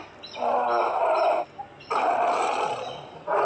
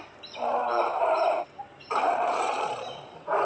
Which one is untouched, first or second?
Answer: first